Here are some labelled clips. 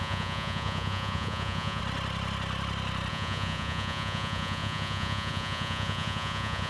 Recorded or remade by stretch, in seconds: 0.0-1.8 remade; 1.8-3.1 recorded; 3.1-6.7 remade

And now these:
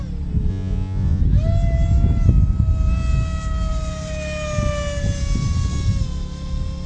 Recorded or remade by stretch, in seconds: 0.0-0.5 recorded; 0.5-1.2 remade; 1.2-6.9 recorded

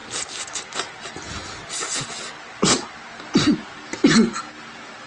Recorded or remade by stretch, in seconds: 0.0-5.1 recorded

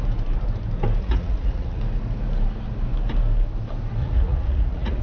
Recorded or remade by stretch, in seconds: 0.0-1.0 recorded; 1.0-1.8 remade; 1.8-4.0 recorded; 4.0-5.0 remade

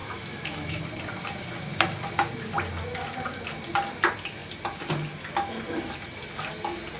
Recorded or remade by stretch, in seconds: 0.0-0.8 remade; 0.8-7.0 recorded

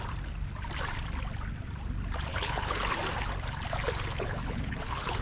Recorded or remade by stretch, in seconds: 0.0-2.3 recorded; 2.3-2.9 remade; 2.9-4.1 recorded; 4.1-5.2 remade